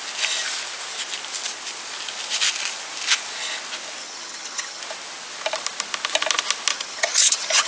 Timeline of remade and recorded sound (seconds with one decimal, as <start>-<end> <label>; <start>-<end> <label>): 0.0-4.0 recorded; 4.0-4.8 remade; 4.8-6.7 recorded; 6.7-7.7 remade